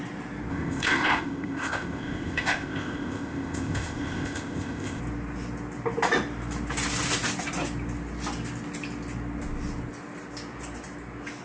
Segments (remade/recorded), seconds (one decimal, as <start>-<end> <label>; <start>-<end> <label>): 0.0-0.5 recorded; 0.5-5.0 remade; 5.0-11.4 recorded